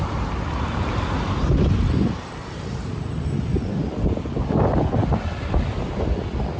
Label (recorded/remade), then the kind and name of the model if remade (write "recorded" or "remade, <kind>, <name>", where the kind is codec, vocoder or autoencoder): recorded